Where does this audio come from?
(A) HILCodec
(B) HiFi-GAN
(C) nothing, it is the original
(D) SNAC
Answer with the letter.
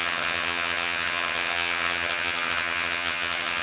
B